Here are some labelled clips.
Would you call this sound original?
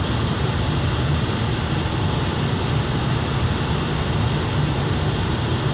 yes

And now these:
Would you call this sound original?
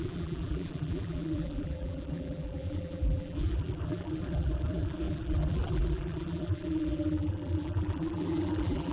no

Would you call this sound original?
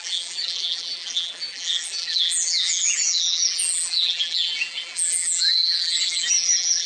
no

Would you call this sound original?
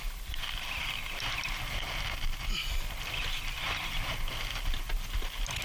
yes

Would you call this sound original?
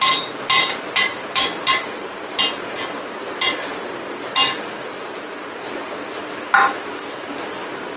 yes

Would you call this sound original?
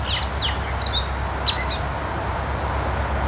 yes